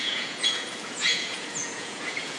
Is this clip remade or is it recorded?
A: remade